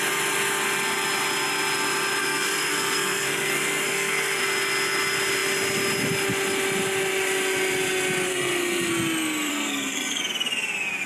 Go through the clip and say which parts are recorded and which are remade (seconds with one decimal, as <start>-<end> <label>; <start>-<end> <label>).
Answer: 0.0-2.2 recorded; 2.2-4.4 remade; 4.4-8.3 recorded; 8.3-8.9 remade; 8.9-9.5 recorded; 9.5-10.2 remade; 10.2-11.1 recorded